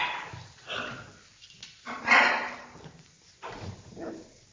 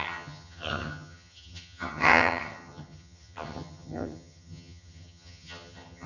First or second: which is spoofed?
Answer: second